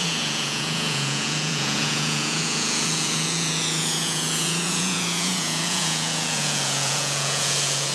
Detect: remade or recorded remade